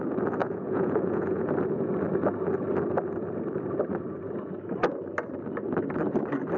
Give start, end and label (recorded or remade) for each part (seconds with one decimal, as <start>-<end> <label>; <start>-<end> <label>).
0.0-0.4 recorded; 0.4-1.5 remade; 1.5-6.6 recorded